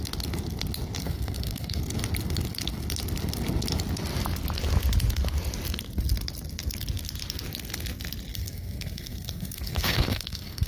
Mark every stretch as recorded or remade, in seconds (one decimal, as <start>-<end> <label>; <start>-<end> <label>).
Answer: 0.0-1.0 recorded; 1.0-1.8 remade; 1.8-8.3 recorded; 8.3-10.7 remade